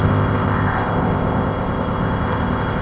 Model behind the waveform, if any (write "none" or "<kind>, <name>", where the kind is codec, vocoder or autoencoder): codec, ZipCodec